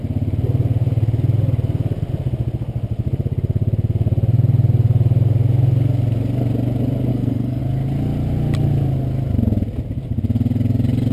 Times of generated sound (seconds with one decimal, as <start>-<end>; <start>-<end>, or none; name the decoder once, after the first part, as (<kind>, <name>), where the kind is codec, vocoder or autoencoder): 7.1-7.6 (codec, SNAC)